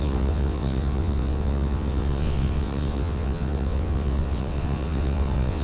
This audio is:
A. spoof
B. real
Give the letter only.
A